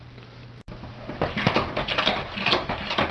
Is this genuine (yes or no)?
yes